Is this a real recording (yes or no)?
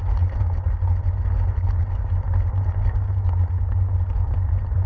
yes